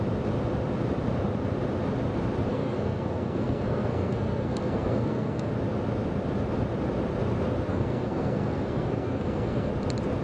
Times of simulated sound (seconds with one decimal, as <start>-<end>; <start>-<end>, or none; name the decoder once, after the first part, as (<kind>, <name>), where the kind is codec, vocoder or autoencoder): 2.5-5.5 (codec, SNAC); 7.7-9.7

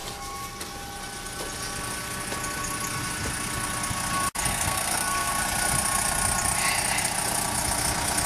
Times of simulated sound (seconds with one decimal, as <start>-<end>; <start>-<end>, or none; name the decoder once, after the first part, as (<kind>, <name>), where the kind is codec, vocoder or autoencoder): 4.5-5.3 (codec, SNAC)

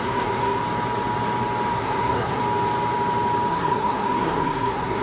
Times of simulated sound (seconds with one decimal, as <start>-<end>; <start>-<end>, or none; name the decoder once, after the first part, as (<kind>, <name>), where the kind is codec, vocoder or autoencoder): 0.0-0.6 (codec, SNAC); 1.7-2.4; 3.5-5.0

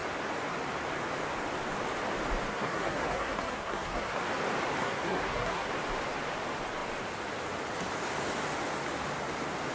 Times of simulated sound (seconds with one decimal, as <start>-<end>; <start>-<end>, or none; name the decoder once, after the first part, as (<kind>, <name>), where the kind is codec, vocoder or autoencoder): 2.5-4.2 (codec, SNAC); 4.8-5.7

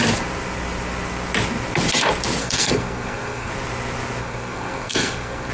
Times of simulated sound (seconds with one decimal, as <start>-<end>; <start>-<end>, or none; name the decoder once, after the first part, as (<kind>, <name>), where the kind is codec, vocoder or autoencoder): 2.4-3.5 (codec, SNAC); 4.2-5.5

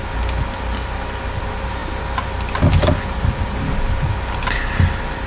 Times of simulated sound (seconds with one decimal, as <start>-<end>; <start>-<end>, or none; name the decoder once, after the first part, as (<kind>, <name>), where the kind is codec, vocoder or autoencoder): none

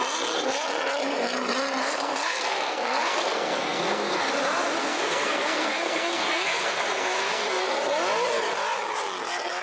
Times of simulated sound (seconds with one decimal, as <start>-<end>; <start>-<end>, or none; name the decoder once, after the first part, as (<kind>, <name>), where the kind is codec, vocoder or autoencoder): 1.8-4.3 (codec, SNAC); 4.8-7.6

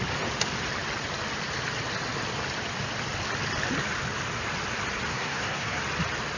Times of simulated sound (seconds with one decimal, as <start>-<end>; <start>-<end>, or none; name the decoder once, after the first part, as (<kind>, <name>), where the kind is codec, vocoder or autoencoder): 5.1-5.8 (codec, SNAC)